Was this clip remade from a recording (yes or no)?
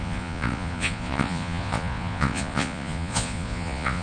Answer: yes